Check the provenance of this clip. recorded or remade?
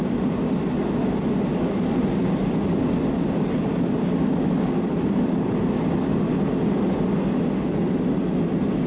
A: recorded